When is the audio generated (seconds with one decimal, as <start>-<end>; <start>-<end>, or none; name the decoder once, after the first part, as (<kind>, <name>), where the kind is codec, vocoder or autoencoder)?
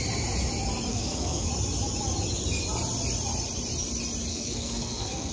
0.9-1.5 (codec, SNAC); 4.3-5.3